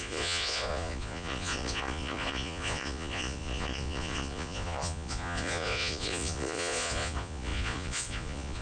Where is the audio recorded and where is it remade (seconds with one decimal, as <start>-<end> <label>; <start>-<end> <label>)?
0.0-8.6 remade